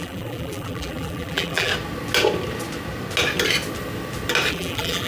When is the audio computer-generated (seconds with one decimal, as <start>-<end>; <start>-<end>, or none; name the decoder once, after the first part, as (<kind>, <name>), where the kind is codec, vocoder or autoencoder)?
0.0-1.7 (vocoder, BigVGAN v2); 4.5-5.1